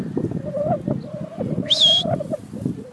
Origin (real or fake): real